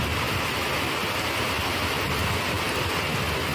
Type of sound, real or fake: real